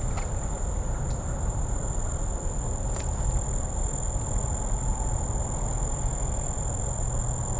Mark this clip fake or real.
real